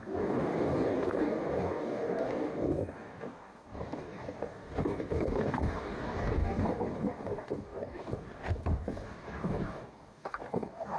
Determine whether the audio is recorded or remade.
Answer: remade